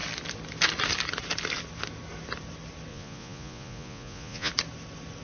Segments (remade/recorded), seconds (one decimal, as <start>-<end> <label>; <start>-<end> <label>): 0.0-2.9 recorded; 2.9-4.5 remade; 4.5-5.2 recorded